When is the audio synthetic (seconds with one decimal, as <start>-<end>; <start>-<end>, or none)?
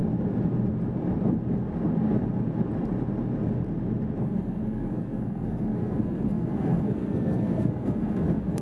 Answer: 4.2-8.6